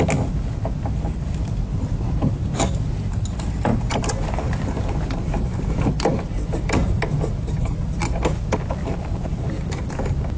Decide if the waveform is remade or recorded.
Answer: recorded